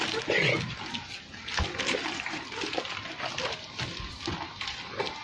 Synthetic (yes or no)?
no